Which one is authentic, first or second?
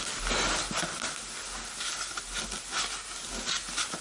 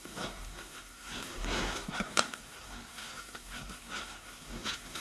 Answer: first